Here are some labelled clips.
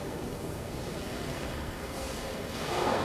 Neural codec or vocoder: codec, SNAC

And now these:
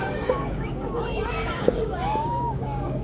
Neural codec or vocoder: codec, DAC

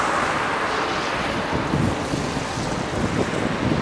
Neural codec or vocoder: none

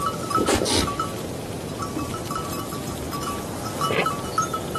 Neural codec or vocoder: none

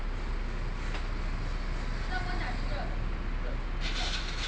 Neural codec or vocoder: none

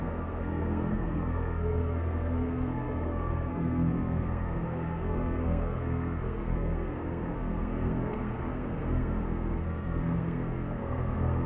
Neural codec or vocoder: codec, SNAC